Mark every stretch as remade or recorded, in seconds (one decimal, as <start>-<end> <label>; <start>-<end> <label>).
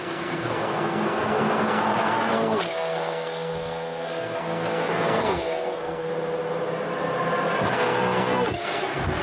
0.0-6.1 remade; 6.1-7.7 recorded; 7.7-9.2 remade